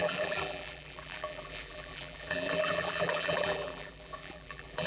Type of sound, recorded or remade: remade